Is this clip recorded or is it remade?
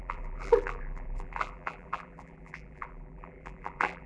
remade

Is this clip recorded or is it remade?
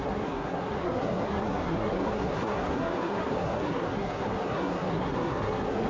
remade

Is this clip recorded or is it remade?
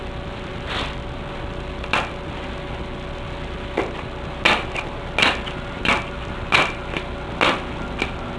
recorded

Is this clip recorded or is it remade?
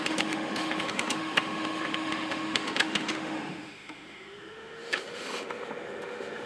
remade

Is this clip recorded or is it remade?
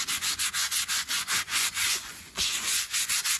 remade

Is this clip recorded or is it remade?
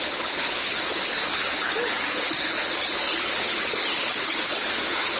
remade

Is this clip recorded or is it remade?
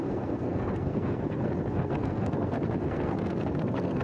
remade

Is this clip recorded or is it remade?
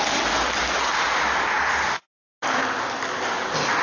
recorded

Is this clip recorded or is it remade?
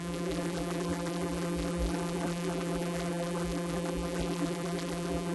remade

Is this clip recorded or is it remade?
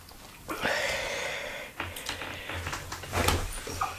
recorded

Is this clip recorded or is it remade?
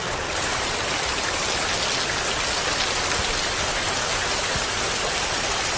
recorded